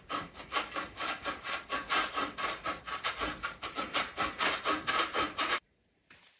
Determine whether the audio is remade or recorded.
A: remade